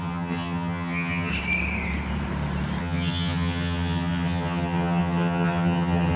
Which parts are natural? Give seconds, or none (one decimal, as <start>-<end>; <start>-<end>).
1.3-2.8